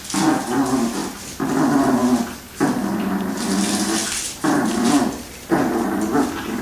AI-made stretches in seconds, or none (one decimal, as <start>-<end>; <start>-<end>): 4.0-5.5